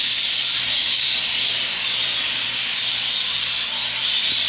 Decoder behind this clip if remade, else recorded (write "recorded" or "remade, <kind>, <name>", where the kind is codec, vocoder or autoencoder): recorded